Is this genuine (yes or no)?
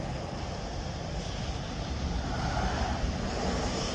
yes